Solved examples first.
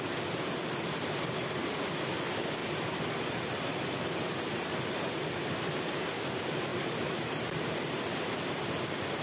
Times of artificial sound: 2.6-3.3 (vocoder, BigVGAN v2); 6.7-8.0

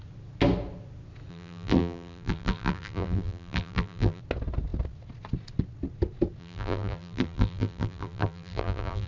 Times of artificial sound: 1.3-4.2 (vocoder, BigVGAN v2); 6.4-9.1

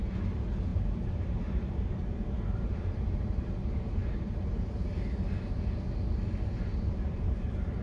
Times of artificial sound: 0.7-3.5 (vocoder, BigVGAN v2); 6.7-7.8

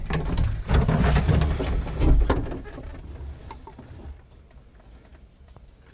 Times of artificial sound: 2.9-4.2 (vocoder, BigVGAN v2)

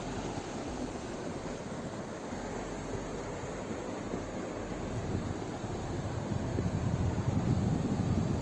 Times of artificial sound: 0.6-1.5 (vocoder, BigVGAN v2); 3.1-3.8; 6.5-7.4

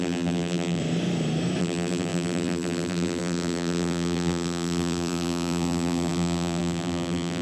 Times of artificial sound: 0.0-0.8 (vocoder, BigVGAN v2); 1.6-7.4

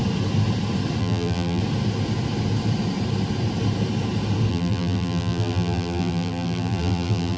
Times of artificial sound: 1.0-1.6 (vocoder, BigVGAN v2); 4.5-7.4